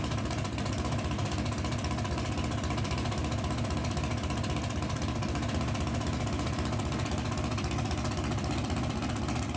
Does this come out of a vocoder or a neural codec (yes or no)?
no